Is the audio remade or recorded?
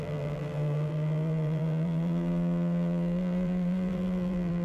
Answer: remade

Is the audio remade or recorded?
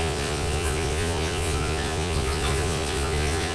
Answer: remade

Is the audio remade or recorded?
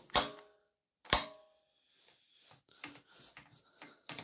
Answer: recorded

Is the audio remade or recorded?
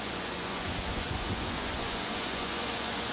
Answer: remade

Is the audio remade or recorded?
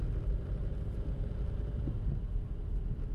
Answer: recorded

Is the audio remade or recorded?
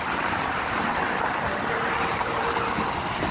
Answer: recorded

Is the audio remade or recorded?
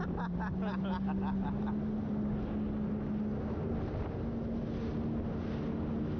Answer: recorded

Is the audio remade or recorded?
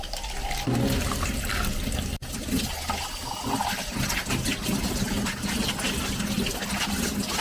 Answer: recorded